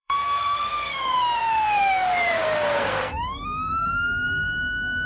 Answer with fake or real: fake